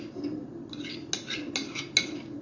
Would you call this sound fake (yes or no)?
no